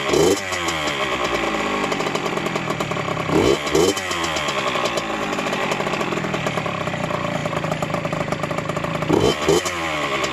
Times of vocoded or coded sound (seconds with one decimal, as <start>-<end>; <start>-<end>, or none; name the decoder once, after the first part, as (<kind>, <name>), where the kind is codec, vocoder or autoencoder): none